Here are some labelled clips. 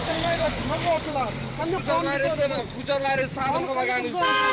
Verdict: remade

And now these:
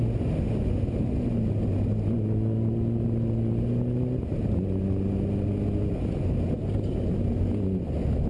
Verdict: recorded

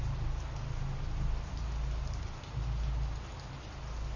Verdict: recorded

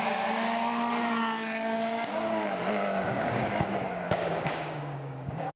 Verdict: remade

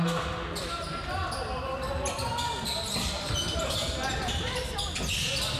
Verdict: recorded